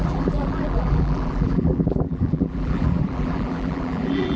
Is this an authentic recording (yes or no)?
no